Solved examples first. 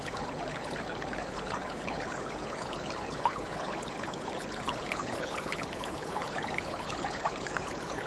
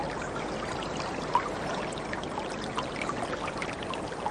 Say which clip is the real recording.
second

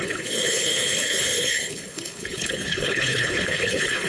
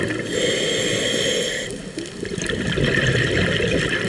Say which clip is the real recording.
second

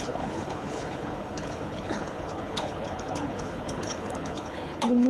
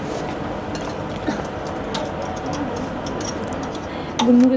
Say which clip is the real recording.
second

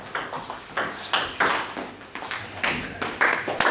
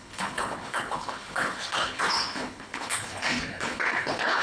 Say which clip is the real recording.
first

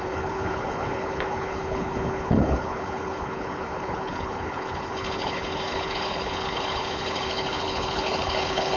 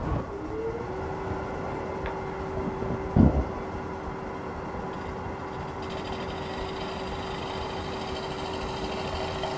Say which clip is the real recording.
second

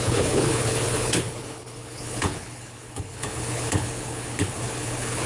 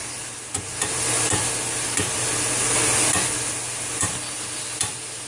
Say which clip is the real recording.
second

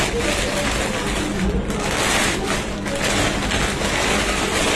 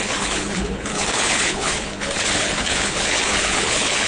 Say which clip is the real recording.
first